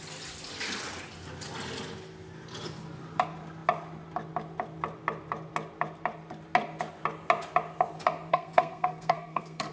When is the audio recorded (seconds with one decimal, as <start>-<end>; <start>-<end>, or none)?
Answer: 0.0-8.3